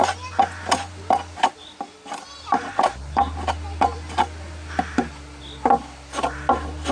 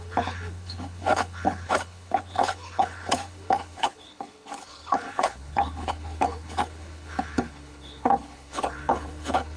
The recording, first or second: first